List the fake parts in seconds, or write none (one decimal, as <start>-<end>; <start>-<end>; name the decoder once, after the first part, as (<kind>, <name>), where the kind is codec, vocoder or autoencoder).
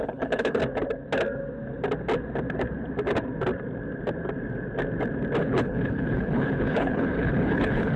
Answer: 0.0-0.6 (codec, HILCodec); 5.4-8.0